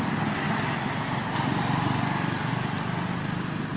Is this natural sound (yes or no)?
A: yes